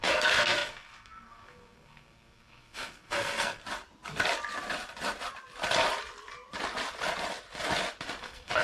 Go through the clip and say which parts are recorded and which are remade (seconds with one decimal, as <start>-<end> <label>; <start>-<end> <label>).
0.0-3.6 remade; 3.6-8.2 recorded; 8.2-8.6 remade